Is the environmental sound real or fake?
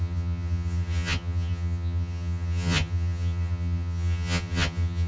fake